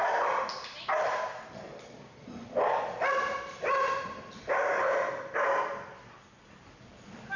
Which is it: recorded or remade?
remade